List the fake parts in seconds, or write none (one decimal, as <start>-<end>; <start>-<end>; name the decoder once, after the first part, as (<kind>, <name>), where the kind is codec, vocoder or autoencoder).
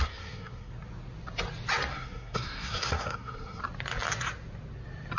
0.0-0.7 (codec, SNAC); 1.9-3.6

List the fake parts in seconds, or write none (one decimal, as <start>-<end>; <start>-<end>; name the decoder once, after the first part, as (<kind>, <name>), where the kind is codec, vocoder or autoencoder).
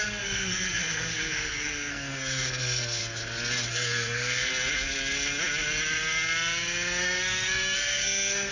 0.0-3.0 (codec, SNAC); 3.7-4.5; 7.0-8.5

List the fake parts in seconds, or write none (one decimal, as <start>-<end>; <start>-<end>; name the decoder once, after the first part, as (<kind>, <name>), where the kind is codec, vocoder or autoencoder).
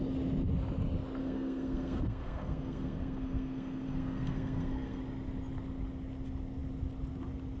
1.2-5.0 (codec, SNAC)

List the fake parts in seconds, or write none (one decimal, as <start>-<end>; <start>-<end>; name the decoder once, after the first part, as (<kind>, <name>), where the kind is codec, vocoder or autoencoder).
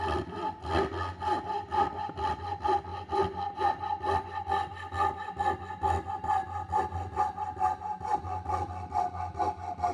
none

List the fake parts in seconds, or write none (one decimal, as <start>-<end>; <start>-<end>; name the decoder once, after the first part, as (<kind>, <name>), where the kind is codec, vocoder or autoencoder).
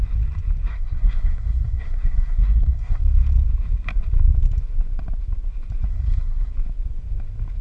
0.7-3.0 (codec, SNAC); 5.9-6.5